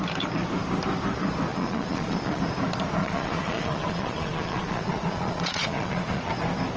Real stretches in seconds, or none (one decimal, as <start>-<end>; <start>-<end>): 0.0-1.5; 2.4-3.0; 6.3-6.8